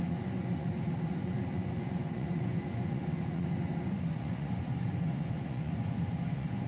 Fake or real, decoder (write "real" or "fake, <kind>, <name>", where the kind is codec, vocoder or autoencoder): fake, vocoder, Vocos